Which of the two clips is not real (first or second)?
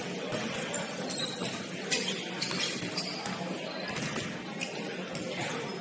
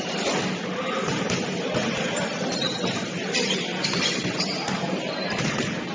second